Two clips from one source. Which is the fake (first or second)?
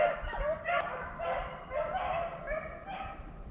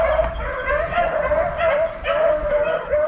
second